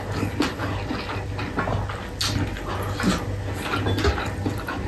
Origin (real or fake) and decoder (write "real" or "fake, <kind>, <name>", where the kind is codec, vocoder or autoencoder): real